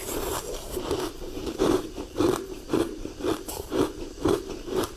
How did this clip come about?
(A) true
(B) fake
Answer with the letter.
B